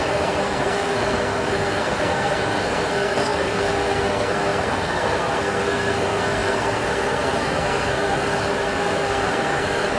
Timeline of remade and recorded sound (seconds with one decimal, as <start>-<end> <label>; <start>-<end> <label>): 0.0-10.0 remade